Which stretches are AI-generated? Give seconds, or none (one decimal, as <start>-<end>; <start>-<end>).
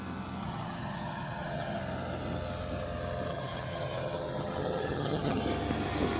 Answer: 0.4-1.8; 3.3-5.4